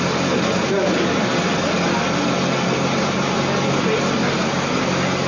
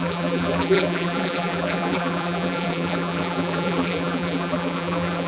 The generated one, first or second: second